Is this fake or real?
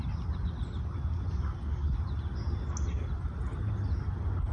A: real